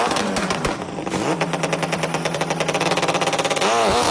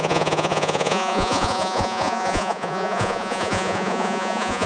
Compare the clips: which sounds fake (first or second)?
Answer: second